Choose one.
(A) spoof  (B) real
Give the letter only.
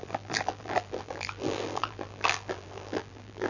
A